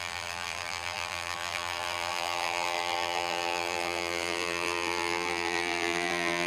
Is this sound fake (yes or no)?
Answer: yes